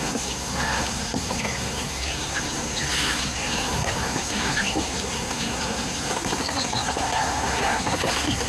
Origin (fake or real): fake